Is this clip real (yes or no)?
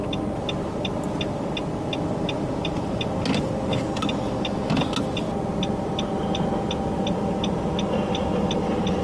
yes